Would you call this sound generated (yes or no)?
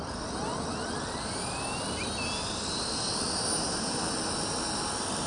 no